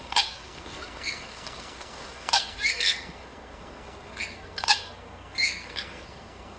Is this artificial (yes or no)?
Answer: yes